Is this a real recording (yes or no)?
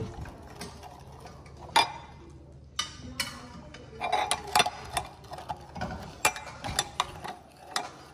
yes